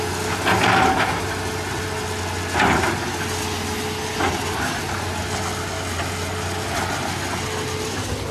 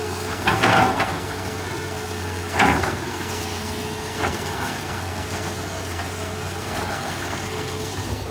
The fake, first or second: second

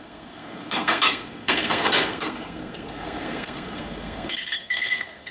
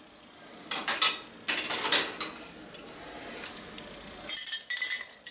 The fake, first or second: first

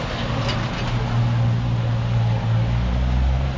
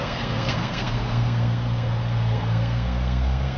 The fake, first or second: second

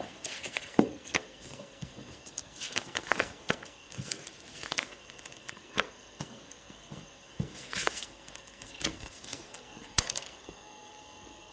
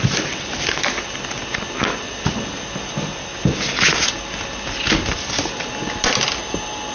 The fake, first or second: first